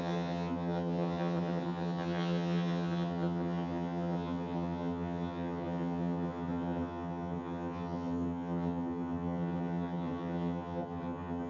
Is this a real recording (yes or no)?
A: no